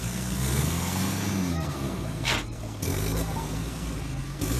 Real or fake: fake